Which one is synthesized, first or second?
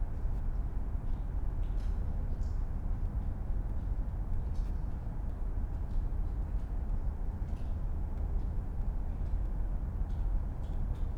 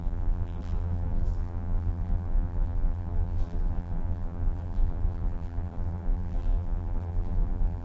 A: second